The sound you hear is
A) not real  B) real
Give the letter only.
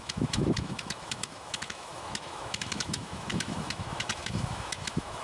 A